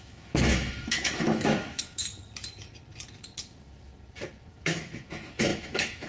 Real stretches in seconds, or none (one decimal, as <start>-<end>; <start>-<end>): 2.1-4.5

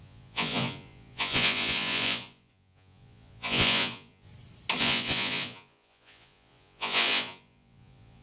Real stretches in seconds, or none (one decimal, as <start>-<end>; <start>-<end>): 4.3-4.8

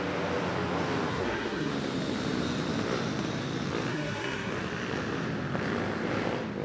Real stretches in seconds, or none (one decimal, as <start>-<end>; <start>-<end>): 0.0-1.1; 1.7-3.9; 4.5-6.6

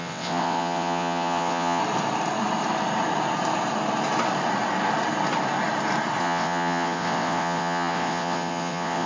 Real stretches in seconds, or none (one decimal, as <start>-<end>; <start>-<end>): 1.8-6.2

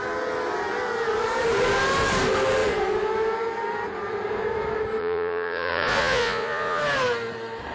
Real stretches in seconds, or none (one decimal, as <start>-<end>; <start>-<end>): 0.0-5.0; 6.8-7.7

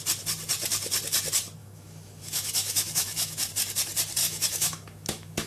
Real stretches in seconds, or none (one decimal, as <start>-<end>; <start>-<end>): 0.0-1.6; 3.5-4.2

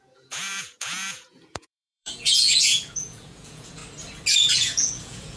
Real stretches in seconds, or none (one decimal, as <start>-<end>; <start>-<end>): 3.8-4.5